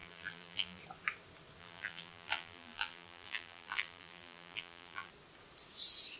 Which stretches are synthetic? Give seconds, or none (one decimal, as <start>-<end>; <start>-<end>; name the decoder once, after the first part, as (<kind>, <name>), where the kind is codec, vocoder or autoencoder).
0.0-0.8 (vocoder, BigVGAN v2); 1.6-5.1